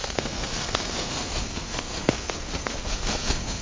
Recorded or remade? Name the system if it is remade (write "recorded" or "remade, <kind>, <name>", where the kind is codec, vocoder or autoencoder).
remade, codec, SNAC